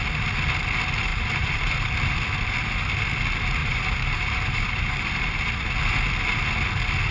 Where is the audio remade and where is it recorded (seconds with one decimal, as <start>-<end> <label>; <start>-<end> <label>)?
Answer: 0.0-1.1 recorded; 1.1-1.9 remade; 1.9-3.6 recorded; 3.6-5.5 remade; 5.5-7.1 recorded